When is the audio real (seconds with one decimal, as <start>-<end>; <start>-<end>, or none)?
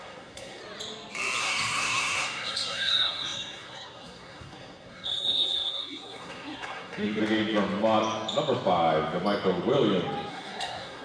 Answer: 0.6-1.4; 7.2-10.3